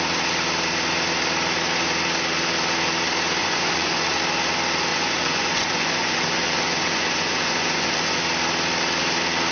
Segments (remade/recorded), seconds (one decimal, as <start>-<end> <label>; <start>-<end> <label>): 0.0-3.4 recorded; 3.4-4.2 remade; 4.2-4.9 recorded; 4.9-8.2 remade; 8.2-9.5 recorded